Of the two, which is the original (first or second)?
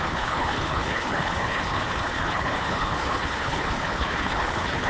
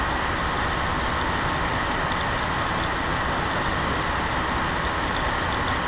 second